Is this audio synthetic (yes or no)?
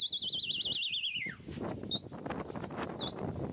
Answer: no